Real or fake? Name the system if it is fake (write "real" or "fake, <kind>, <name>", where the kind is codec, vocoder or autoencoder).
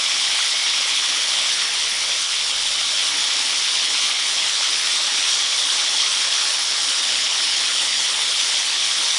fake, codec, HILCodec